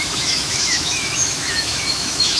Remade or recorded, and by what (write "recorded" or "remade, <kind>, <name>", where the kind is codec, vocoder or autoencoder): remade, autoencoder, DAC-VAE